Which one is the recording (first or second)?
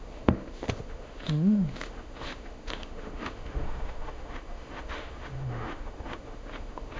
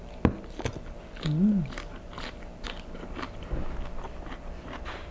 second